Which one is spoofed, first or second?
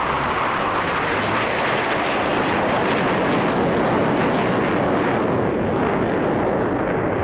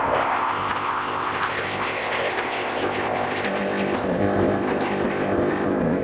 second